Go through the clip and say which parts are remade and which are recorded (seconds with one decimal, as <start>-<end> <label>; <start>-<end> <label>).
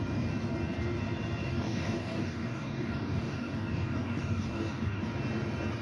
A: 0.0-1.5 recorded; 1.5-5.0 remade; 5.0-5.8 recorded